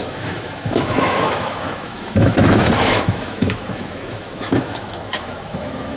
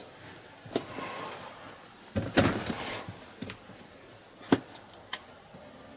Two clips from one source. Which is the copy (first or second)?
first